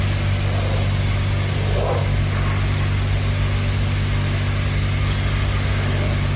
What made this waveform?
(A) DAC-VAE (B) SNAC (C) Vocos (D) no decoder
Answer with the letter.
D